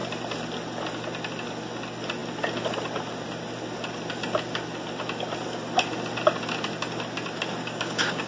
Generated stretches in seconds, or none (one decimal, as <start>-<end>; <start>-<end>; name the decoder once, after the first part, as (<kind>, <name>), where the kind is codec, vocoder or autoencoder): 7.6-8.3 (codec, DAC)